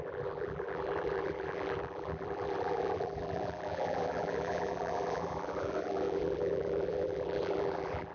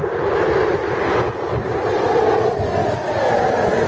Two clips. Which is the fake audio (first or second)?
first